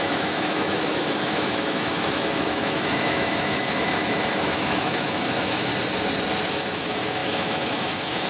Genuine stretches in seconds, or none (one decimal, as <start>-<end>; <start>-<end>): 5.7-6.5